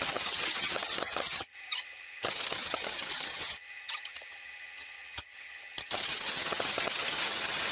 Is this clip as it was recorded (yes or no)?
no